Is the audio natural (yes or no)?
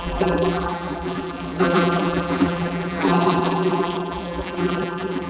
no